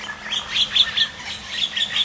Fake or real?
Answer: real